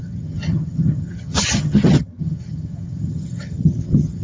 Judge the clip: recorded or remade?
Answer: remade